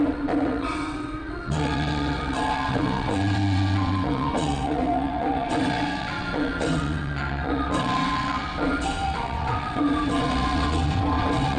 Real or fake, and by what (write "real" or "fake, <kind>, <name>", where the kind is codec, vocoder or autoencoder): fake, vocoder, WaveNeXt